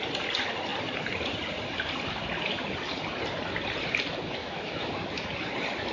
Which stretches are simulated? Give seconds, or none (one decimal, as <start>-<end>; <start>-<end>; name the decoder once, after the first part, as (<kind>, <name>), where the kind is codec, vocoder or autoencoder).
4.4-5.2 (autoencoder, DAC-VAE)